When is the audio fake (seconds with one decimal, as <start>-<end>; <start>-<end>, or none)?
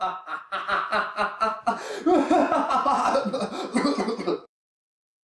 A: 1.3-1.8; 2.4-3.2; 3.7-4.5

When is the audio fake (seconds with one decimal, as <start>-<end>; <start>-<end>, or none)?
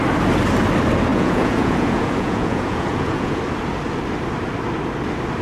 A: 1.1-3.4